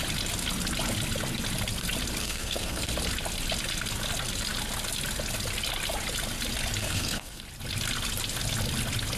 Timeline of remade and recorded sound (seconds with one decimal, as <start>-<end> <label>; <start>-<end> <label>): 0.0-2.2 recorded; 2.2-2.9 remade; 2.9-6.8 recorded; 6.8-7.4 remade; 7.4-9.2 recorded